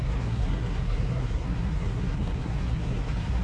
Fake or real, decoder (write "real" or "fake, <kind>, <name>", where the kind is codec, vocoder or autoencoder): fake, codec, SNAC